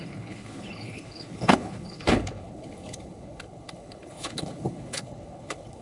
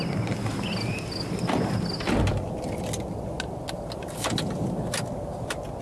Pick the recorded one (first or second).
second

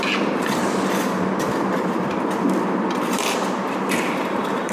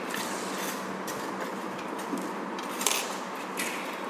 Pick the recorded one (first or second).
second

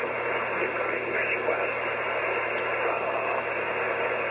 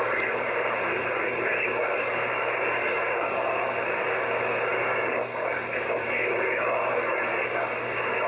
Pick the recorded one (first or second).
first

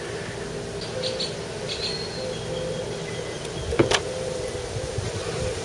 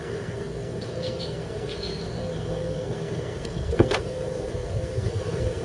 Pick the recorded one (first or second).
first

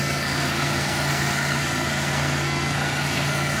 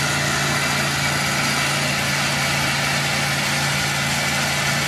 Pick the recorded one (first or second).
second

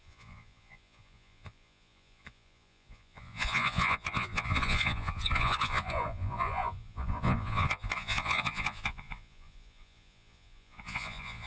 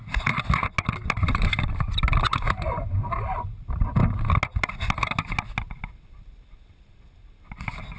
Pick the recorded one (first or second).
second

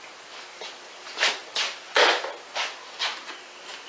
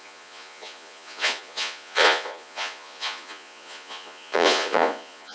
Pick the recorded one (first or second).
first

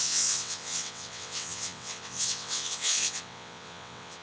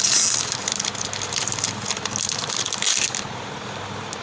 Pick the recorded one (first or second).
second